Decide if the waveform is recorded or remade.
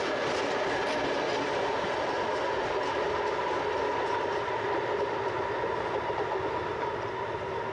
recorded